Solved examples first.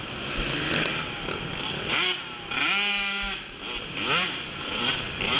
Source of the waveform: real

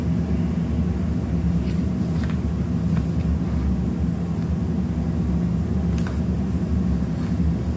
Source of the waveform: real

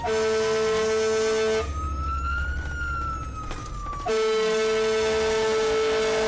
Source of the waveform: real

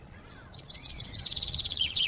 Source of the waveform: fake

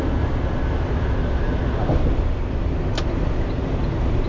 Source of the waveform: real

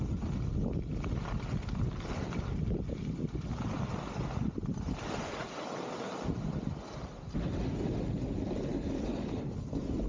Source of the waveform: real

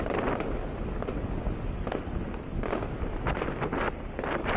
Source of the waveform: real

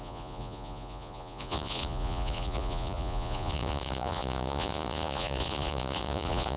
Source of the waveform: fake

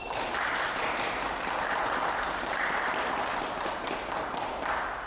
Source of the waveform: real